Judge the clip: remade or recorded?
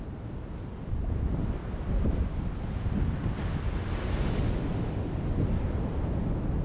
recorded